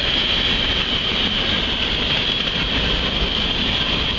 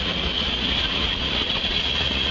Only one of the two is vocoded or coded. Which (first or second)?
second